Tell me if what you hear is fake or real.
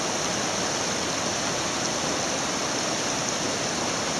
real